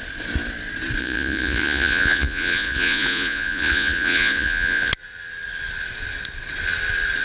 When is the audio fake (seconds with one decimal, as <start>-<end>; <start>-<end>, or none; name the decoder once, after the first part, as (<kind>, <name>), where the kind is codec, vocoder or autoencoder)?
1.0-4.9 (vocoder, Vocos)